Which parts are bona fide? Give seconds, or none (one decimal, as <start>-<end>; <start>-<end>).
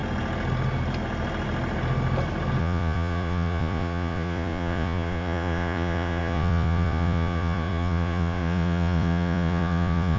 0.0-2.6